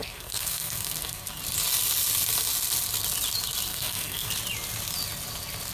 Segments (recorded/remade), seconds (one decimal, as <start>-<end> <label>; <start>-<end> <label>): 0.0-1.4 remade; 1.4-3.7 recorded; 3.7-4.3 remade; 4.3-5.7 recorded